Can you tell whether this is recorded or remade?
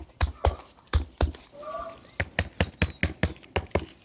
recorded